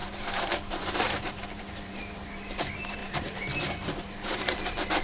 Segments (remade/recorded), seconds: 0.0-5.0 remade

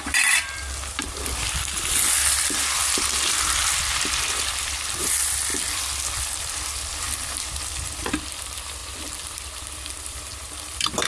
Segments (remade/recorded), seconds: 0.0-2.8 remade; 2.8-4.2 recorded; 4.2-5.5 remade; 5.5-6.2 recorded; 6.2-8.8 remade; 8.8-9.3 recorded; 9.3-11.1 remade

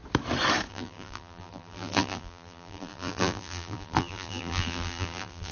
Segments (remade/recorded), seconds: 0.0-0.7 recorded; 0.7-5.5 remade

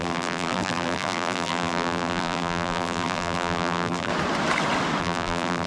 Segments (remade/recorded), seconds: 0.0-4.1 remade; 4.1-5.0 recorded; 5.0-5.7 remade

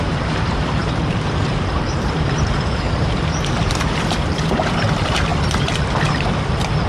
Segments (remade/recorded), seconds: 0.0-5.3 remade; 5.3-6.9 recorded